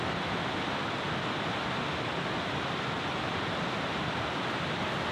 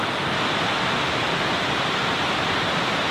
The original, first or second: first